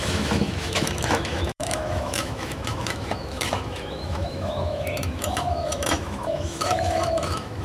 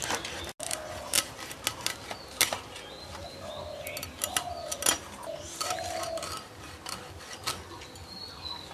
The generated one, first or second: first